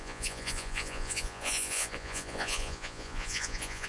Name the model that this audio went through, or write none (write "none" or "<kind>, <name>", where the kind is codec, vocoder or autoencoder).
vocoder, Vocos